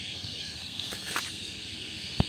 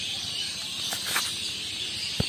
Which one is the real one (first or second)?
second